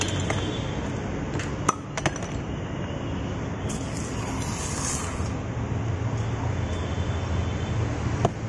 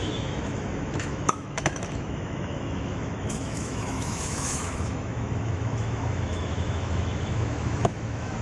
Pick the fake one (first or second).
second